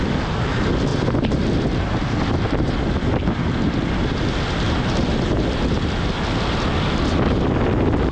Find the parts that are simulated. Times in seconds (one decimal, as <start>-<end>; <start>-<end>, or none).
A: none